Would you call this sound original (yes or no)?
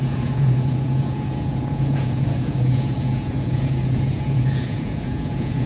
no